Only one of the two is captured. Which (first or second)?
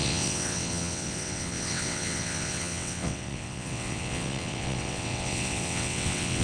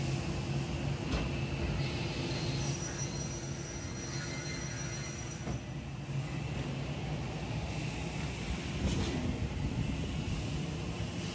second